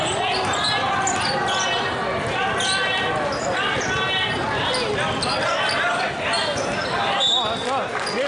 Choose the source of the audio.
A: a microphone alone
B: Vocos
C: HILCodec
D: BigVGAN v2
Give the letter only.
A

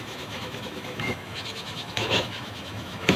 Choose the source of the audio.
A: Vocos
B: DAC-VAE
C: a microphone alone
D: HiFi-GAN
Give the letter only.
B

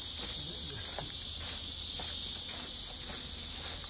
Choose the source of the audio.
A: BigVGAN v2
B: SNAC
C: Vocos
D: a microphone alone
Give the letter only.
D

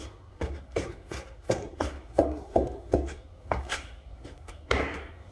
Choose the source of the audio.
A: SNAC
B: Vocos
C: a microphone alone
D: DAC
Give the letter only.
A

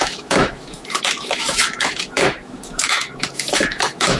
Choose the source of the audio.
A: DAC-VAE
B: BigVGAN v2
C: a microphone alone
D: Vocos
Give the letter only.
A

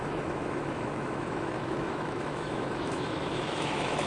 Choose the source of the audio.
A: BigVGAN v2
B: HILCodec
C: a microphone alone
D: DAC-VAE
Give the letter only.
D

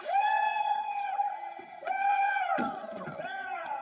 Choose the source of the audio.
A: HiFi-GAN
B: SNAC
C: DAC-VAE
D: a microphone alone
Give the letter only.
A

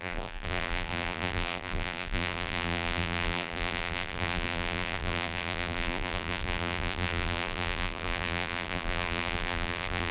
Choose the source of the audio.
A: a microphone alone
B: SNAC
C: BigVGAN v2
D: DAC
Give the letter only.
C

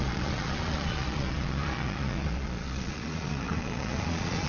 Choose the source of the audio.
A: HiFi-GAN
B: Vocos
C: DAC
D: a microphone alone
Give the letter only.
B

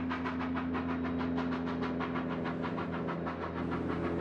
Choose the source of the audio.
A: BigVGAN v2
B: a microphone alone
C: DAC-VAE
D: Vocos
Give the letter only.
B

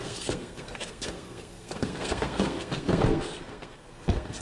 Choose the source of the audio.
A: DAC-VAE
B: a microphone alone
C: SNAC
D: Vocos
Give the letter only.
C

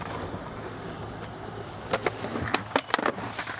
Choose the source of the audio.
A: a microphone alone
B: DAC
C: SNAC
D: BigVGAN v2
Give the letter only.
A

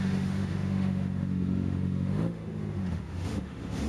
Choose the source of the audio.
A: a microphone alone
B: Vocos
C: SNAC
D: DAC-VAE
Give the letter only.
D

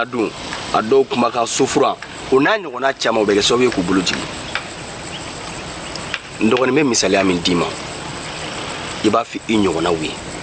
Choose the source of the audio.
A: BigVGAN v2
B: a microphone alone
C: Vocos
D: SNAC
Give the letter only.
B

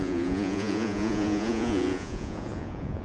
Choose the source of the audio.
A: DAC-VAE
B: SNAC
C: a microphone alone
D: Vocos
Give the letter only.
D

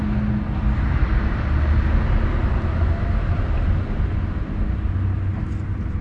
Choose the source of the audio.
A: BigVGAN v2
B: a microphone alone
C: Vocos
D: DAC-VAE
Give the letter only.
B